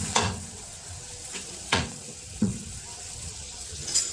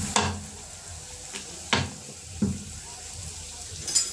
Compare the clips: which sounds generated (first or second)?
first